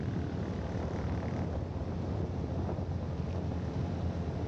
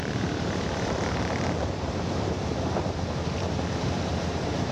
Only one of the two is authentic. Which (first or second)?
first